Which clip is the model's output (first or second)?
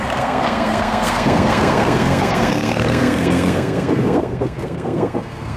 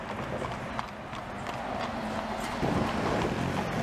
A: first